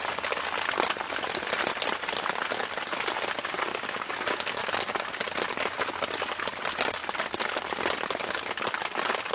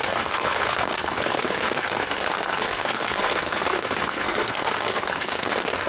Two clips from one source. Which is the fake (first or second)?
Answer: second